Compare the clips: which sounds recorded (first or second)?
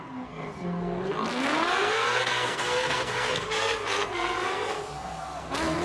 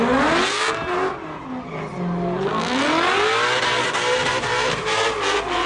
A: second